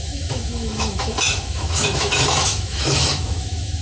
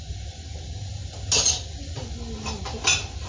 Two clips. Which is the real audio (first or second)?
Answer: second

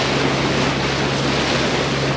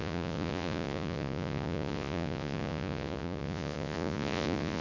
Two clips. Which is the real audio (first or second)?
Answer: first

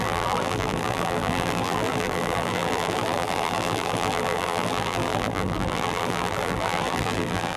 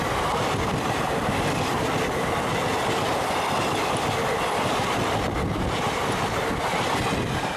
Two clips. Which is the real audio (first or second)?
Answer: second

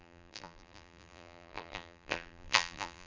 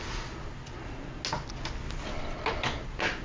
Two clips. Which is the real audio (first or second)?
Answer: second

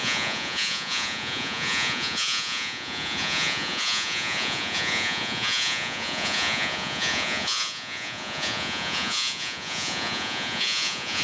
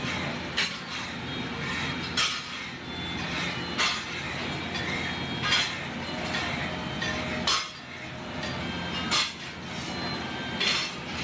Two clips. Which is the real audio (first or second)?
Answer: second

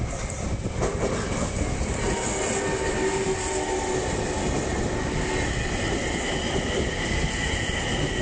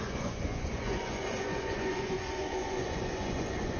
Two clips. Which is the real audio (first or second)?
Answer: first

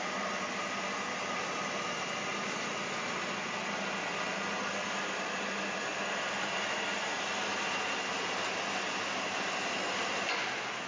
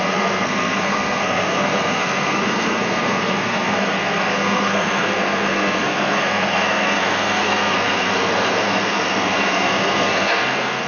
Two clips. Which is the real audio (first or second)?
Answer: first